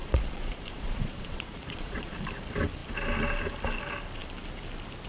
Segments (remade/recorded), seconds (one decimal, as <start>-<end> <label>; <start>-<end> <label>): 0.0-2.1 remade; 2.1-5.1 recorded